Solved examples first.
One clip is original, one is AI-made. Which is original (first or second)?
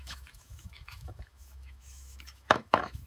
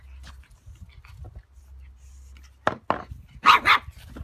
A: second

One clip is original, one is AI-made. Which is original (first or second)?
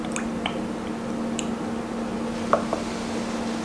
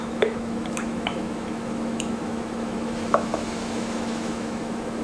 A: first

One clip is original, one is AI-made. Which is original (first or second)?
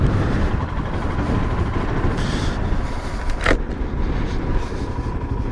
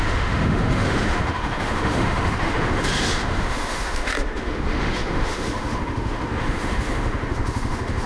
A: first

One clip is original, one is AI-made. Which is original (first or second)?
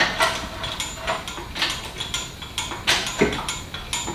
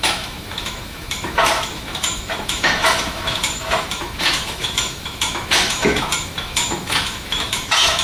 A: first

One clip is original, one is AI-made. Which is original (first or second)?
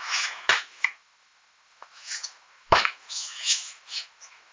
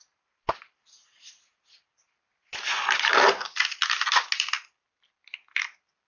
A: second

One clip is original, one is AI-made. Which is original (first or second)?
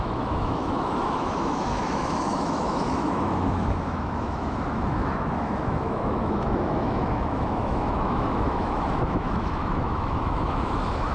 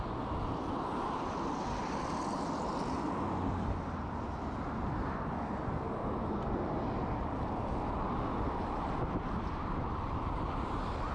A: second